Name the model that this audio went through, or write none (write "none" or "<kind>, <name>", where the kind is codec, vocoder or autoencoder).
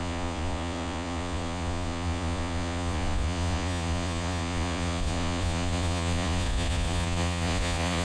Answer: vocoder, Vocos